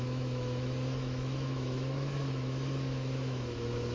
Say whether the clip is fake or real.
fake